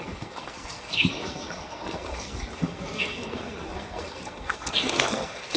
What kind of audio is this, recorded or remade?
remade